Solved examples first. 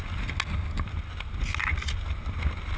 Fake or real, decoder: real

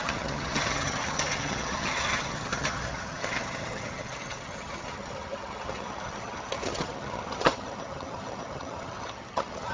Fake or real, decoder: fake, vocoder, HiFi-GAN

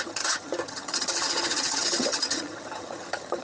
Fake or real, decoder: fake, vocoder, HiFi-GAN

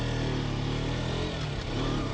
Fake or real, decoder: real